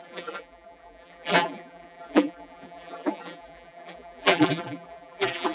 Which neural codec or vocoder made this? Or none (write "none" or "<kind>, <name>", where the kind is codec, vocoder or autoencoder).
vocoder, BigVGAN v2